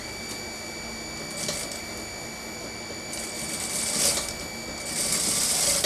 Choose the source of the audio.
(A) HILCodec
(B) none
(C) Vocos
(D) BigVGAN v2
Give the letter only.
B